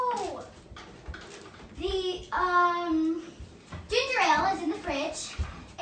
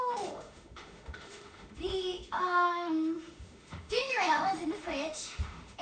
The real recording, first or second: first